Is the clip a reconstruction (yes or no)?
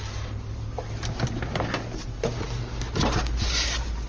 no